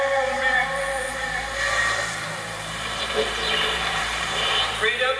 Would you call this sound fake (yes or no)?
yes